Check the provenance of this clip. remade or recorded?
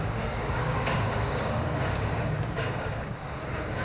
remade